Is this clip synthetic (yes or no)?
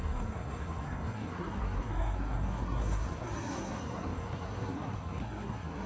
yes